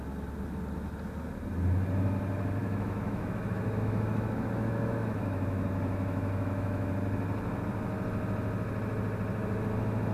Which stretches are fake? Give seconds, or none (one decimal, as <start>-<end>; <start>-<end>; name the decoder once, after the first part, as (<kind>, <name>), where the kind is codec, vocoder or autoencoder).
2.6-6.9 (autoencoder, DAC-VAE)